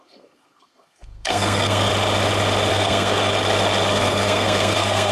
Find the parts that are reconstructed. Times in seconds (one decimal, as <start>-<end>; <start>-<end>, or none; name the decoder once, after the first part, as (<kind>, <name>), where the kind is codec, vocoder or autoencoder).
0.0-1.9 (codec, SNAC); 2.7-3.3; 3.9-5.1